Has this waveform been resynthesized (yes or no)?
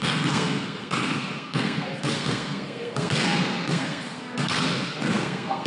yes